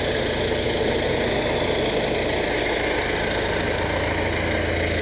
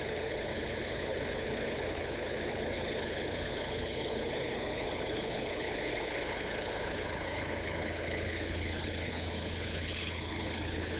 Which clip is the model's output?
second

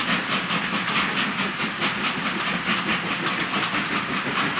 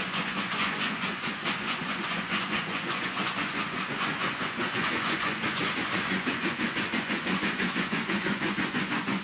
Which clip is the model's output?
second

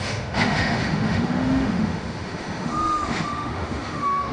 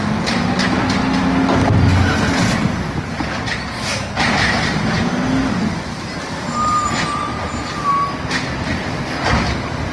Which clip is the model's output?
first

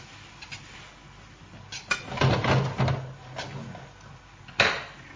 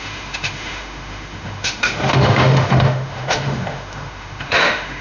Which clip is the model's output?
second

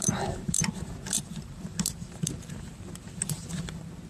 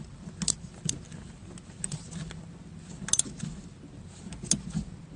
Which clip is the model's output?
first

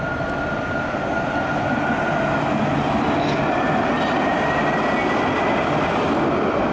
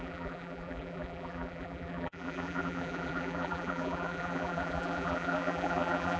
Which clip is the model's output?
second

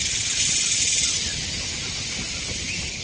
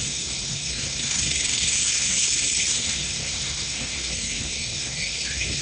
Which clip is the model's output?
second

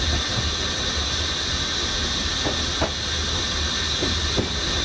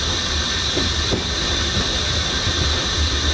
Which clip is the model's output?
second